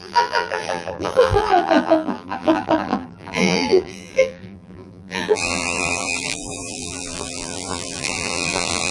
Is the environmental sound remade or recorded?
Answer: remade